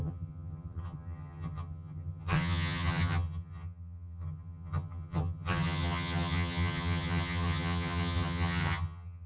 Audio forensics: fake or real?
fake